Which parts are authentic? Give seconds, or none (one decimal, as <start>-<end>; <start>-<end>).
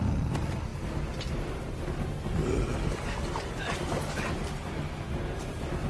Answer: 0.0-2.7; 4.9-5.9